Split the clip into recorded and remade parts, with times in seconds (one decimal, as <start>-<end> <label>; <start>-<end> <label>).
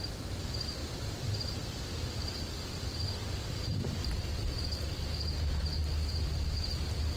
0.0-7.2 recorded